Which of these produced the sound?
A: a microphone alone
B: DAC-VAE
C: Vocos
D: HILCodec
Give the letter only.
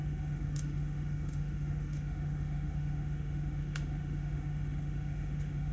B